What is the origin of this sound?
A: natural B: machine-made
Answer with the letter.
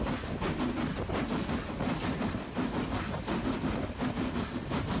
A